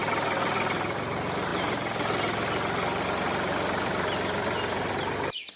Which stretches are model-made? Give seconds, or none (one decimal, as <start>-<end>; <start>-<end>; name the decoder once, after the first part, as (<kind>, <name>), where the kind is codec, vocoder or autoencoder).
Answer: none